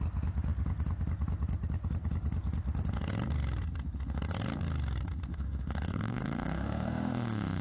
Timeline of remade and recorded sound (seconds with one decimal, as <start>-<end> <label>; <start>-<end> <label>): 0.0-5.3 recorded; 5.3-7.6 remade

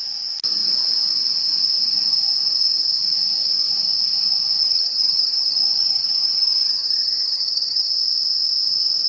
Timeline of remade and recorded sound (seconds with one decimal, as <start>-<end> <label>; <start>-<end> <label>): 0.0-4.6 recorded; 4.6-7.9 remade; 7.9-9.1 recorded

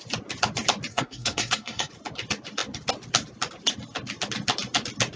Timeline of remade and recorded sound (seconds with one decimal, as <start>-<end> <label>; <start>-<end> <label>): 0.0-0.9 recorded; 0.9-1.9 remade; 1.9-5.2 recorded

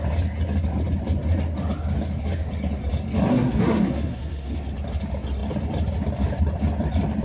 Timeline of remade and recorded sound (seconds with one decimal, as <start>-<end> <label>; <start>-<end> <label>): 0.0-3.3 recorded; 3.3-4.7 remade; 4.7-7.2 recorded